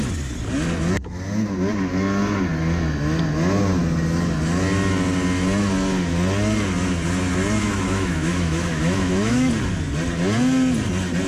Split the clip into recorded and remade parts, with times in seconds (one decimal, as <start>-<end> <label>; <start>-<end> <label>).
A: 0.0-7.6 recorded; 7.6-9.5 remade; 9.5-11.3 recorded